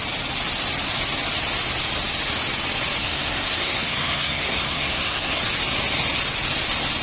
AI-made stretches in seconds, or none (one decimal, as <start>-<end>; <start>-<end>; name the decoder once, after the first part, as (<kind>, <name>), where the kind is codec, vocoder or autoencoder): 3.0-5.4 (codec, SNAC)